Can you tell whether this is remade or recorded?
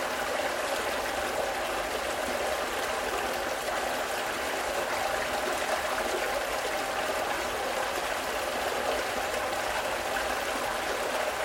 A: recorded